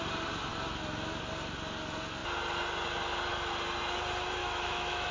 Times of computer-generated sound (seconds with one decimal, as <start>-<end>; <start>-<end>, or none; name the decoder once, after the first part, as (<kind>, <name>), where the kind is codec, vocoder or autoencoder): 4.4-5.1 (autoencoder, DAC-VAE)